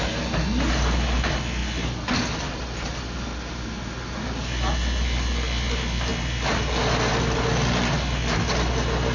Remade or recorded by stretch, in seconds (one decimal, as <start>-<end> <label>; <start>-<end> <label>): 0.0-9.1 recorded